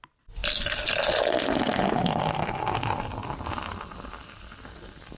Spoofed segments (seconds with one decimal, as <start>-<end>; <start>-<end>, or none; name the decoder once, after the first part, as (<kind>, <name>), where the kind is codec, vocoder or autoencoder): none